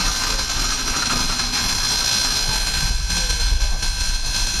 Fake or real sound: real